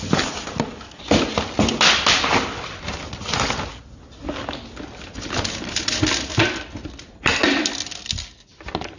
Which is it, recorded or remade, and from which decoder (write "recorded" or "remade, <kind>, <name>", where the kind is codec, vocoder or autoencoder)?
recorded